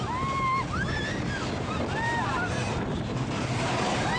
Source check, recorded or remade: recorded